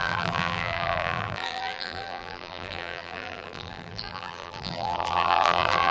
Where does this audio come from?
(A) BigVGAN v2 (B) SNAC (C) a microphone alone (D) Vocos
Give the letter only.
A